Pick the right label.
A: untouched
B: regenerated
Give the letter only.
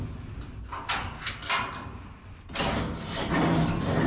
A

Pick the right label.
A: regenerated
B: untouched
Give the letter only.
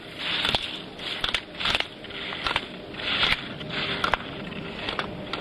A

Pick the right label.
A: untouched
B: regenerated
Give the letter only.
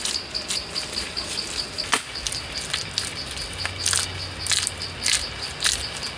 A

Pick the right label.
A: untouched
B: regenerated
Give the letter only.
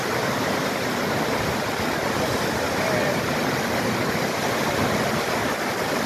A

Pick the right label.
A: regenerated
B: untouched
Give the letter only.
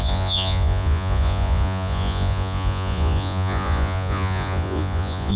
A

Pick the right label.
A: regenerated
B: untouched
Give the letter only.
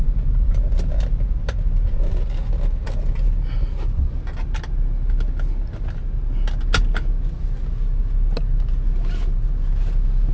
B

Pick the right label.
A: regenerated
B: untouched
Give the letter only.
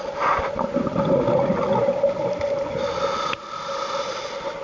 B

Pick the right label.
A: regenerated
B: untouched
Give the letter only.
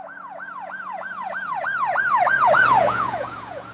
A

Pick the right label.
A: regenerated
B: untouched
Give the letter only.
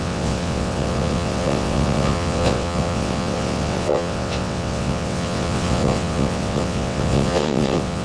A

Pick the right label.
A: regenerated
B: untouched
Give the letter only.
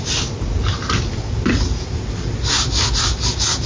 B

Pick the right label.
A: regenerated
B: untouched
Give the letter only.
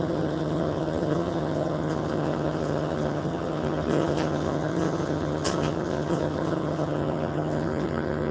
A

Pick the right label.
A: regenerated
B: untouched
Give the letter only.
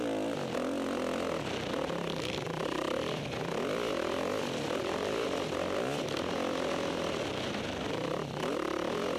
B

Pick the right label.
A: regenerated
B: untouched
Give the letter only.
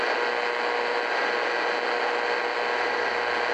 B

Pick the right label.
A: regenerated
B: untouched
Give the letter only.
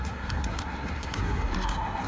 A